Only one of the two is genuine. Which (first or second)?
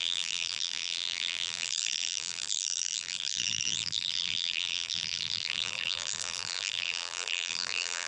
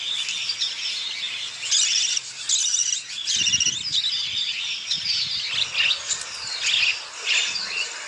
second